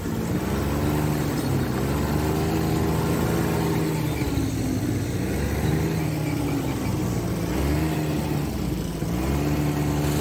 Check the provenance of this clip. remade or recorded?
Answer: recorded